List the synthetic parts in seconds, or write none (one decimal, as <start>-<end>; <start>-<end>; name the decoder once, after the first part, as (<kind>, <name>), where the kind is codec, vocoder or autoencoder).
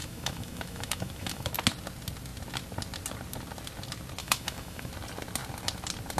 0.0-1.5 (autoencoder, DAC-VAE); 4.2-4.9